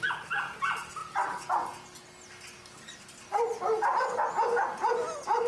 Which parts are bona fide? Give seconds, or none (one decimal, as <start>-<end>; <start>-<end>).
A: 0.0-5.5